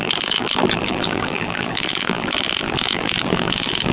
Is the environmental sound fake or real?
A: fake